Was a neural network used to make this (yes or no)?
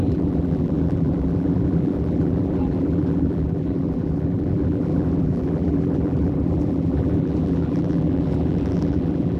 yes